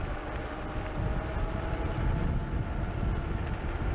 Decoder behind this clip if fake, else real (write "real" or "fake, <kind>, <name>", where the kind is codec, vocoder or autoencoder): real